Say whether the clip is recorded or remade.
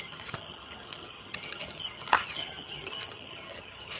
remade